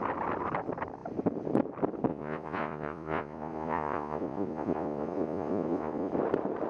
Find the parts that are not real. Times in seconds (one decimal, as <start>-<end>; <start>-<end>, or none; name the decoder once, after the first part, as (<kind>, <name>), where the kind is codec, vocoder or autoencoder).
2.1-6.1 (vocoder, Vocos)